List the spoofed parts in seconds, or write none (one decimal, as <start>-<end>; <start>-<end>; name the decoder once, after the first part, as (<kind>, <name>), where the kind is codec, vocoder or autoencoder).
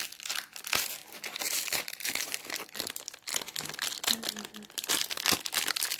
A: 1.0-2.4 (vocoder, BigVGAN v2)